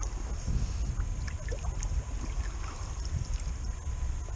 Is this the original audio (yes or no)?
yes